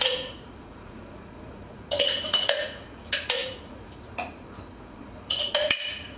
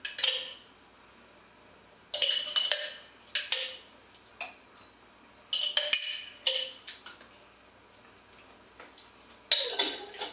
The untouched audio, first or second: second